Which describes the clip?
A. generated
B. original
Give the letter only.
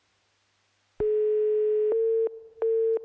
B